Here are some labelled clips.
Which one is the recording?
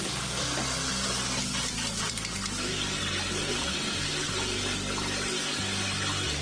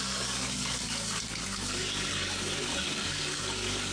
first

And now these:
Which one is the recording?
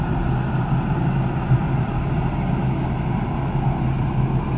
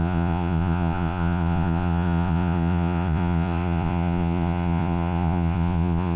first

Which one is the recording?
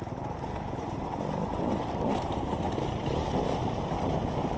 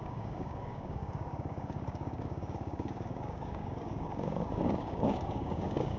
first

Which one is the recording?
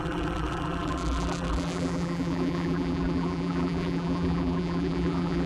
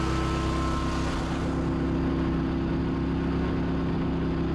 second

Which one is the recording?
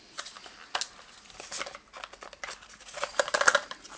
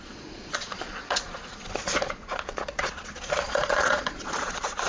first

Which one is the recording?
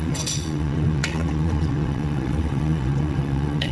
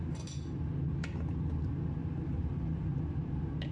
second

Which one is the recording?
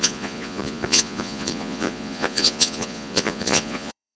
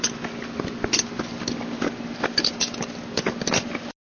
second